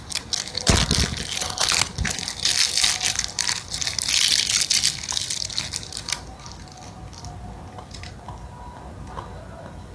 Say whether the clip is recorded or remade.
recorded